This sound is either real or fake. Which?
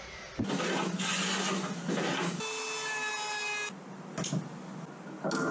real